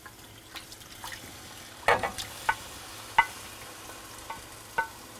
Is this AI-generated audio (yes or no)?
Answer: no